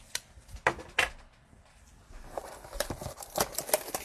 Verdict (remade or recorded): recorded